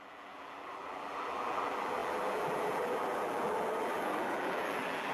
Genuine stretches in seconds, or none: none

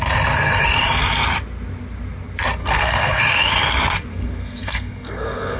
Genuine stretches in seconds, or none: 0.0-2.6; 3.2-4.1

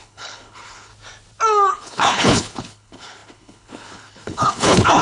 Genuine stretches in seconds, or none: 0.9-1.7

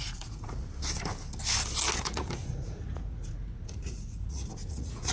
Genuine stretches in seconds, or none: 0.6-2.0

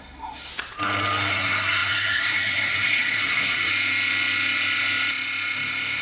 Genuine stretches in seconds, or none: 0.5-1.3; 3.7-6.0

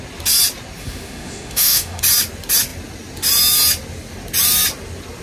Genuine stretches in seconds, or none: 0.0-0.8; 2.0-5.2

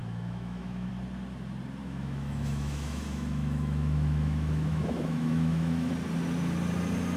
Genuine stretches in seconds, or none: 0.9-1.8; 5.9-7.2